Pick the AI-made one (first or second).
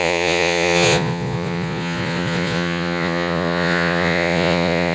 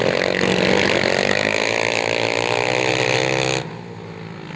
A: first